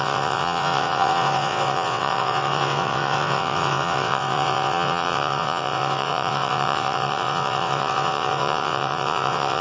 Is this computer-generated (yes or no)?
yes